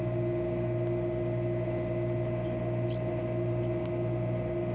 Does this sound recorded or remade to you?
recorded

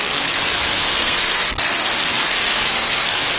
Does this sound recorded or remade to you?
remade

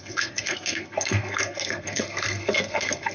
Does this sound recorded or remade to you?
remade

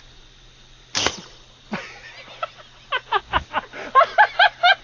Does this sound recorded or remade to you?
recorded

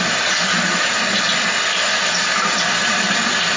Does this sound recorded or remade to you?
recorded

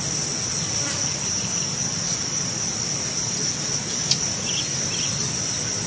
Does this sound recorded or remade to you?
recorded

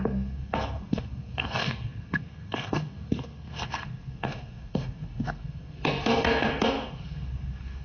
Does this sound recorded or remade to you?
remade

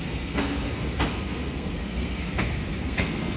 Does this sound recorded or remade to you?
remade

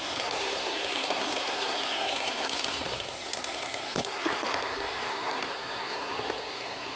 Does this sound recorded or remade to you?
remade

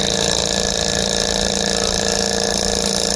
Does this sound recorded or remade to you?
recorded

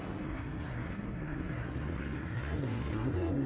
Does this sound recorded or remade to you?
remade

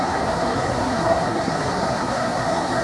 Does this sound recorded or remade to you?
remade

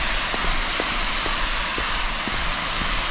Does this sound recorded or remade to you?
recorded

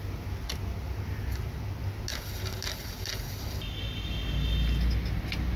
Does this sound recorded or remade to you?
recorded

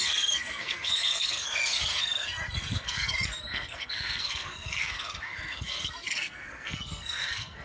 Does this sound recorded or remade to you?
remade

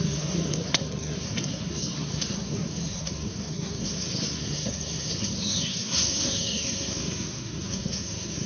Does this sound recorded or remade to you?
remade